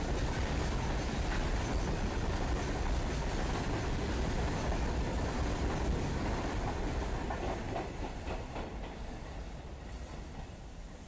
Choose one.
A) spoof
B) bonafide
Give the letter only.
A